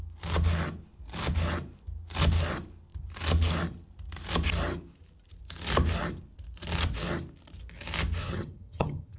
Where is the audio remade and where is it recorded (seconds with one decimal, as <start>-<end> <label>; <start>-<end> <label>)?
0.0-8.2 recorded; 8.2-9.2 remade